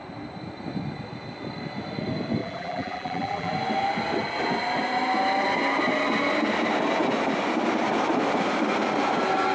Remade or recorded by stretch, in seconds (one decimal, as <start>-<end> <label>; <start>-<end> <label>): 0.0-2.4 recorded; 2.4-3.5 remade; 3.5-9.5 recorded